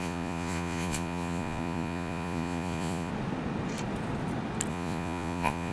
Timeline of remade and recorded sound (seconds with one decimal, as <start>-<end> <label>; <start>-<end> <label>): 0.0-3.1 remade; 3.1-4.7 recorded; 4.7-5.7 remade